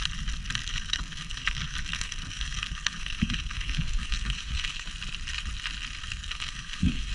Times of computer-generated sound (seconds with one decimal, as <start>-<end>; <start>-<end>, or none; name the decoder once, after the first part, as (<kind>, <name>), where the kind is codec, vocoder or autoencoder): 0.6-4.9 (codec, SNAC); 6.0-7.1